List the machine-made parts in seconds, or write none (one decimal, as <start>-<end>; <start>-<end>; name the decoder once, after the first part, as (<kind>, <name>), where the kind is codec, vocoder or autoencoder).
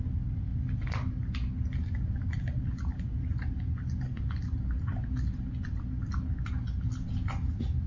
none